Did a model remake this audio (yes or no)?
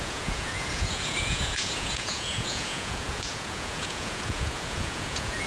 yes